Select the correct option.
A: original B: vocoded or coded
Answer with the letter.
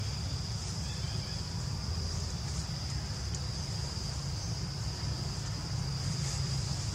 A